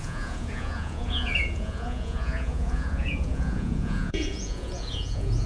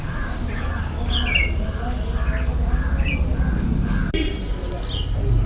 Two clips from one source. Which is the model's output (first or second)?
first